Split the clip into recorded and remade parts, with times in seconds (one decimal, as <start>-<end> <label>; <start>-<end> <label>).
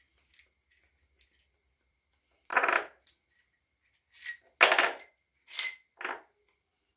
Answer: 0.0-7.0 recorded